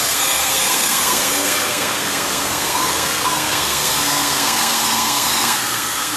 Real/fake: fake